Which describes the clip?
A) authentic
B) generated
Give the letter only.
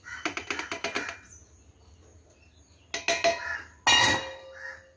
A